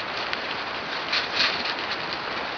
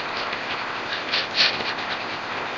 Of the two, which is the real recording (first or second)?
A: first